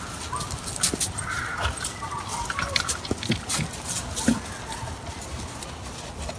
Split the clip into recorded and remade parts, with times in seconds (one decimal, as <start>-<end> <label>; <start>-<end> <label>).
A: 0.0-6.4 recorded